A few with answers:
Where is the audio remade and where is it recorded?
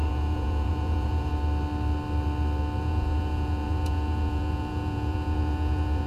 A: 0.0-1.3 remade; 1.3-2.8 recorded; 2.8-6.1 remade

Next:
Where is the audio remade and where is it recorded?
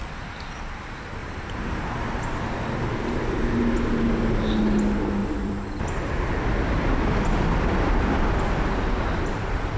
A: 0.0-1.2 recorded; 1.2-3.6 remade; 3.6-5.2 recorded; 5.2-6.3 remade; 6.3-9.8 recorded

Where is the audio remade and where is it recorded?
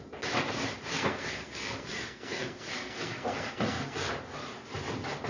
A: 0.0-0.9 recorded; 0.9-4.1 remade; 4.1-5.3 recorded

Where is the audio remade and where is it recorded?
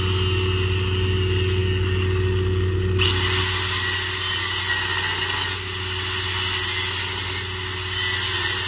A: 0.0-8.7 recorded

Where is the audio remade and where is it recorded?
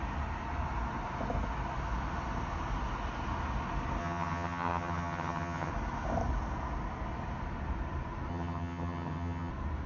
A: 0.0-4.0 recorded; 4.0-5.7 remade; 5.7-8.3 recorded; 8.3-9.5 remade; 9.5-9.9 recorded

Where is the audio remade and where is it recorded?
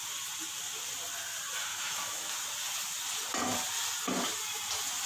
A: 0.0-1.7 recorded; 1.7-2.3 remade; 2.3-5.1 recorded